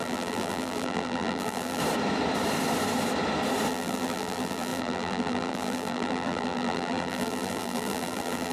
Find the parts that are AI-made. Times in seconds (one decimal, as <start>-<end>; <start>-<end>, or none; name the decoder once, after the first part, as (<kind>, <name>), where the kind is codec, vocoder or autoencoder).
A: 0.0-1.8 (vocoder, BigVGAN v2); 3.7-8.5